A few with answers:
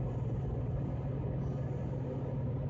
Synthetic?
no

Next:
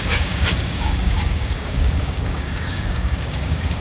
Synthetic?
yes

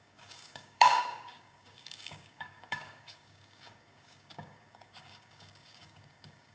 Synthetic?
yes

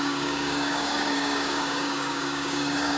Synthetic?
yes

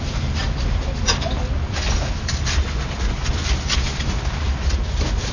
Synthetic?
no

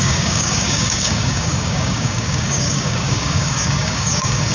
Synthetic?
yes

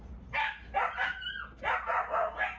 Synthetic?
no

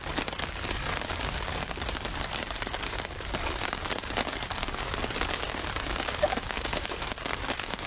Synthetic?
yes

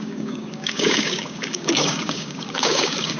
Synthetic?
yes